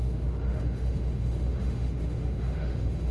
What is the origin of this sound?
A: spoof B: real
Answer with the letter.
A